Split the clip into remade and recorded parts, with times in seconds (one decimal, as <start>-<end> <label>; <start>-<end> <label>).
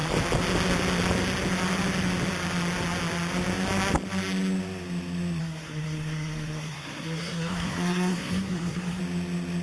0.0-5.4 recorded; 5.4-9.0 remade; 9.0-9.6 recorded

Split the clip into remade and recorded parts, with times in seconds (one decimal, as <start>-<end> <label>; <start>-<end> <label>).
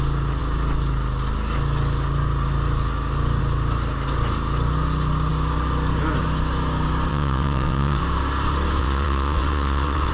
0.0-7.1 recorded; 7.1-8.0 remade; 8.0-8.8 recorded; 8.8-10.1 remade